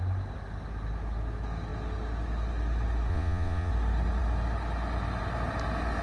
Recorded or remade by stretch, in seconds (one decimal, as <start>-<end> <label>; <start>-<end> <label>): 0.0-3.1 recorded; 3.1-3.7 remade; 3.7-6.0 recorded